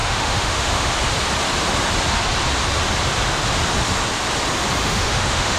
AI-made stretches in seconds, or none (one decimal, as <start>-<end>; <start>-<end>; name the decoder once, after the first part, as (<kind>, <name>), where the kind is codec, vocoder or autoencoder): 0.0-0.9 (autoencoder, DAC-VAE); 4.8-5.6